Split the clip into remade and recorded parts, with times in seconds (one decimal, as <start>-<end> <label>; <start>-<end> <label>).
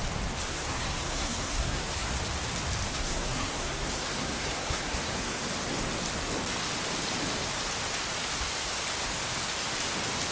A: 0.0-0.5 recorded; 0.5-2.1 remade; 2.1-2.9 recorded; 2.9-5.5 remade; 5.5-10.3 recorded